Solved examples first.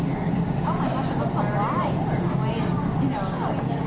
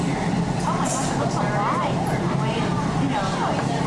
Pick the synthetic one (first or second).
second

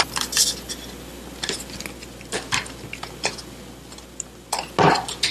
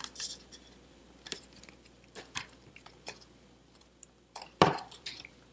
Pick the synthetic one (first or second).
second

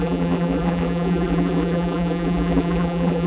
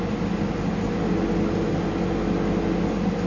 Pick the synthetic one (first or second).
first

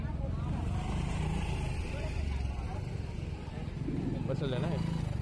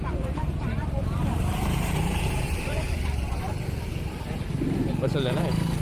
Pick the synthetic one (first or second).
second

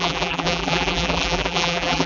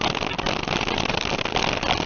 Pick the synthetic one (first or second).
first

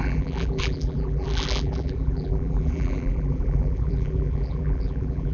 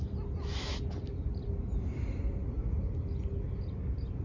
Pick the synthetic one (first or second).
first